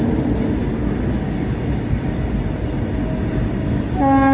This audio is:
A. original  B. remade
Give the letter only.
A